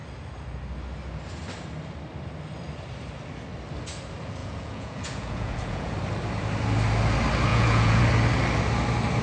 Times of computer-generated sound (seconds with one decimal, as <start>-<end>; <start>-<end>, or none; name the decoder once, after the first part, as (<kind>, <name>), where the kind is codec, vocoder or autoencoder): 4.4-5.9 (vocoder, Vocos); 7.5-8.0